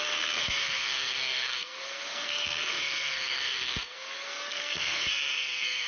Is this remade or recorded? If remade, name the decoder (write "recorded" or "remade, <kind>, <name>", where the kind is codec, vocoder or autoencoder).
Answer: remade, codec, SNAC